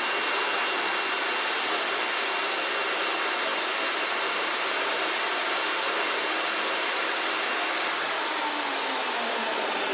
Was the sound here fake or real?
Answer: fake